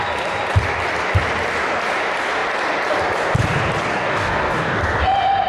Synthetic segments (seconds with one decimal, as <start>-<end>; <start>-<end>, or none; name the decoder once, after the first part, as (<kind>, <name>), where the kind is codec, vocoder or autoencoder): 3.9-4.8 (codec, DAC)